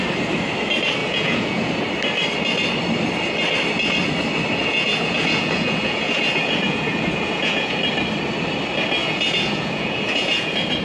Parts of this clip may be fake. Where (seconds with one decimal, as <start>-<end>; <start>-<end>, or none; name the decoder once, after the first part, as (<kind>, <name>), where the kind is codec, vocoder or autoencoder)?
1.0-1.7 (vocoder, Vocos); 4.6-7.8; 9.0-10.8